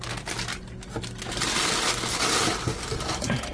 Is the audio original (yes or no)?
yes